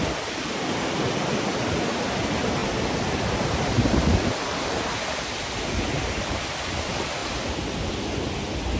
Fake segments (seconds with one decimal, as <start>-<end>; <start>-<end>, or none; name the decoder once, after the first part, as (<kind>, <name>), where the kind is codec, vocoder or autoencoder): none